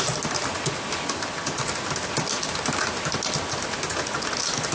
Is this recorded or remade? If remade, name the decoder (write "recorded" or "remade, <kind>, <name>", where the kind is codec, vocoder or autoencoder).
recorded